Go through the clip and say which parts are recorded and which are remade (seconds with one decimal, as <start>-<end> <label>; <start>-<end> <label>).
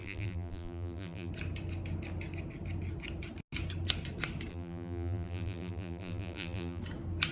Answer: 0.0-1.3 remade; 1.3-4.5 recorded; 4.5-6.8 remade; 6.8-7.3 recorded